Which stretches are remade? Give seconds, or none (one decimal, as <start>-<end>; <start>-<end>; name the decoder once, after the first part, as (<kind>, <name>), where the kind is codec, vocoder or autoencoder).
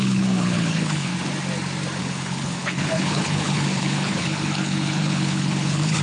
0.0-1.1 (codec, HILCodec); 2.0-6.0